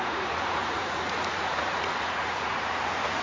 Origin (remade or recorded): remade